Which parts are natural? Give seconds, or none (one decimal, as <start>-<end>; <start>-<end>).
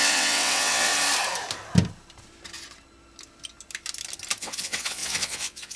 0.9-4.4